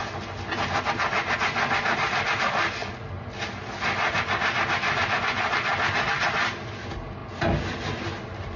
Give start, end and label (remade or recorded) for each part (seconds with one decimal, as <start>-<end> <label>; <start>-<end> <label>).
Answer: 0.0-8.6 recorded